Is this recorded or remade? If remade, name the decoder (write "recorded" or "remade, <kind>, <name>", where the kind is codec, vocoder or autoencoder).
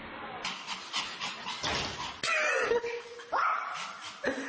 recorded